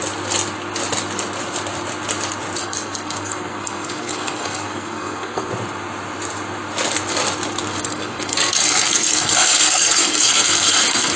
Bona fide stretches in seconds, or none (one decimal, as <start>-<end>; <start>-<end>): 0.0-2.6; 5.5-7.7